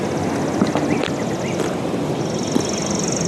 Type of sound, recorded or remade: recorded